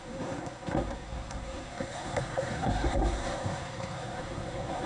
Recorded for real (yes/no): no